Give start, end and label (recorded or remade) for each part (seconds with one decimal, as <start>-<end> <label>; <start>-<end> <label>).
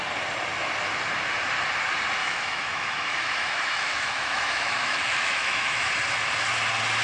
0.0-2.2 recorded; 2.2-5.9 remade; 5.9-7.0 recorded